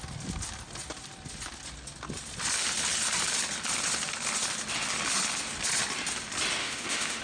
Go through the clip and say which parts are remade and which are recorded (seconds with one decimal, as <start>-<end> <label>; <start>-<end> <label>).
0.0-6.6 recorded; 6.6-7.2 remade